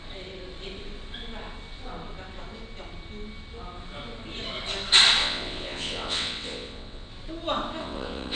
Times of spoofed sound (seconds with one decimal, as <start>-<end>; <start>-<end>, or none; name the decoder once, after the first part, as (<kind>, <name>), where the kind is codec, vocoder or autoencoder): 5.2-7.1 (vocoder, WaveNeXt); 7.8-8.4